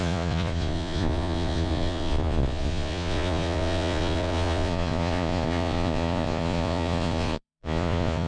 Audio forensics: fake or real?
fake